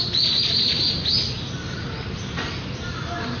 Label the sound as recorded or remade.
recorded